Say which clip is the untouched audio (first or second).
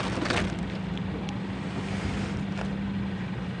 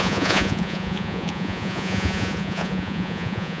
first